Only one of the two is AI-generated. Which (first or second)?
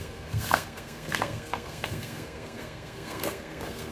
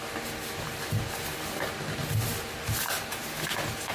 first